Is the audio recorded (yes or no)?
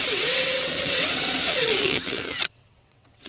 no